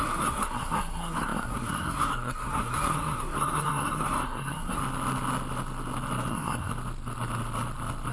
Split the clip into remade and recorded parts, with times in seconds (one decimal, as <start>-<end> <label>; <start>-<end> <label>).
0.0-4.8 remade; 4.8-6.3 recorded; 6.3-6.7 remade; 6.7-8.1 recorded